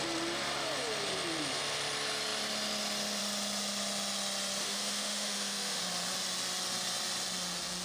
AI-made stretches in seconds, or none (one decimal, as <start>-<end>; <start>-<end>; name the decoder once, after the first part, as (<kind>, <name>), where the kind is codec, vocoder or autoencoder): 4.6-5.8 (autoencoder, DAC-VAE)